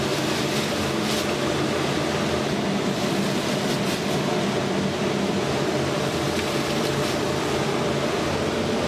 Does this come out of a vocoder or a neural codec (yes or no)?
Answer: no